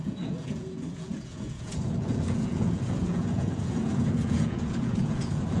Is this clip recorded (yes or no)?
no